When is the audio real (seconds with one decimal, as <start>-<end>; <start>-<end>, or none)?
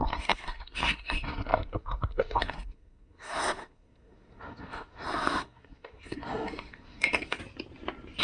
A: 7.4-8.2